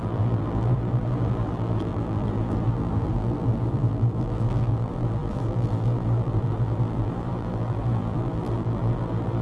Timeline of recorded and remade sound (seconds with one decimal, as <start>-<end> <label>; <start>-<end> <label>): 0.0-9.4 remade